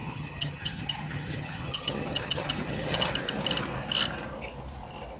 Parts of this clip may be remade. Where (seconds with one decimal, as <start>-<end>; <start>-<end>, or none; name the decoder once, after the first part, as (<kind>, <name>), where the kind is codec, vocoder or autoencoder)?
0.0-3.1 (vocoder, HiFi-GAN)